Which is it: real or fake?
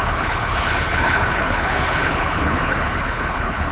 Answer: fake